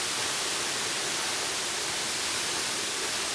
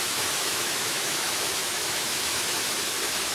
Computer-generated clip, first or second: second